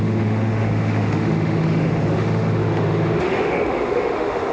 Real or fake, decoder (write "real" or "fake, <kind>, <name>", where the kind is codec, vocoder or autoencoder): fake, autoencoder, DAC-VAE